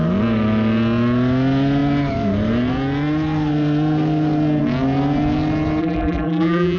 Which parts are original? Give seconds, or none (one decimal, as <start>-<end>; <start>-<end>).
0.0-5.8